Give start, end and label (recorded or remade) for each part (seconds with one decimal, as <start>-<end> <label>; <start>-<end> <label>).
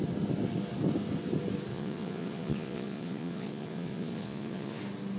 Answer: 0.0-1.7 recorded; 1.7-4.8 remade; 4.8-5.2 recorded